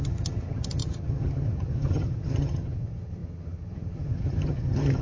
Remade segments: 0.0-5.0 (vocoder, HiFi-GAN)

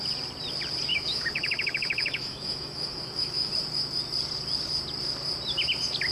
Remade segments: 0.9-3.5 (autoencoder, DAC-VAE)

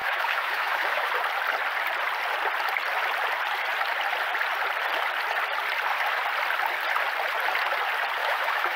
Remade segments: 0.0-1.1 (autoencoder, DAC-VAE); 8.2-8.8

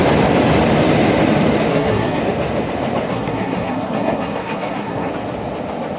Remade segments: 1.7-2.2 (codec, SNAC); 3.1-5.1

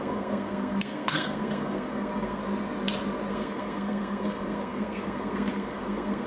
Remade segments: 0.0-2.4 (codec, SNAC); 3.3-6.3

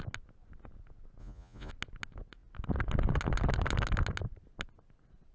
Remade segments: 1.2-1.7 (vocoder, Vocos)

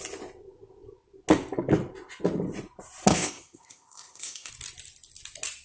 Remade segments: 3.1-4.5 (codec, ZipCodec)